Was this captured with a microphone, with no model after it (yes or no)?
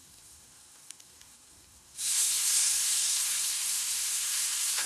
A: no